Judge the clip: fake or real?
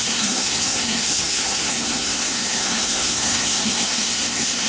fake